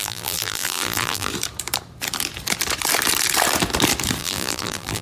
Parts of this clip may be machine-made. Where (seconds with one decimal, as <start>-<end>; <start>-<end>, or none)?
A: 0.0-1.3; 4.2-5.0